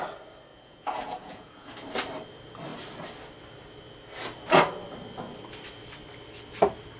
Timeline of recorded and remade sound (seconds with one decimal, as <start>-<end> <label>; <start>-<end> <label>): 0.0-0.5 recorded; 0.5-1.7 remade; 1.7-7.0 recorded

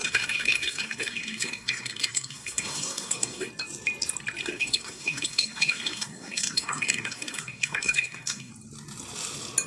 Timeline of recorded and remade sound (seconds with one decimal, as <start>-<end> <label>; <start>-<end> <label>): 0.0-3.5 remade; 3.5-4.4 recorded; 4.4-8.5 remade; 8.5-9.7 recorded

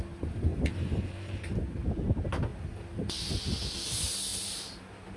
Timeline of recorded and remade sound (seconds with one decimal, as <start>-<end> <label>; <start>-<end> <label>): 0.0-0.5 recorded; 0.5-1.5 remade; 1.5-4.3 recorded; 4.3-5.2 remade

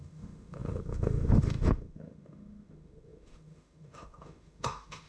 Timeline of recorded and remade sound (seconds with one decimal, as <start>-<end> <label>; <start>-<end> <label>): 0.0-5.1 remade